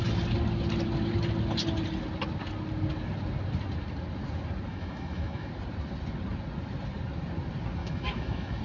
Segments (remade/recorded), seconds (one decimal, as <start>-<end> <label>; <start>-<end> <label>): 0.0-4.7 recorded; 4.7-5.5 remade; 5.5-7.8 recorded; 7.8-8.6 remade